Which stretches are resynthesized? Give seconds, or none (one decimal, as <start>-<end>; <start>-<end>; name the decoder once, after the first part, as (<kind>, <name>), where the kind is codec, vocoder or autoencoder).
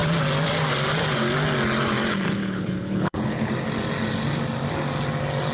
2.4-3.5 (codec, HILCodec)